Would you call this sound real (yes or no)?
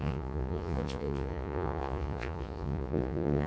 no